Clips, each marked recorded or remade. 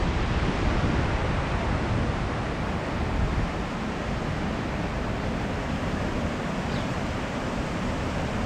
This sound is recorded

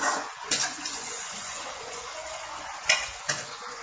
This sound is remade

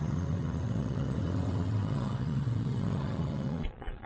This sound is remade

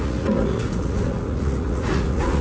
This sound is remade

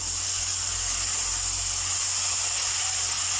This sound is recorded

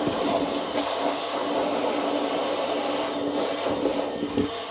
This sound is recorded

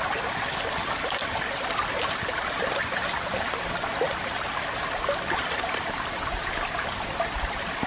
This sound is recorded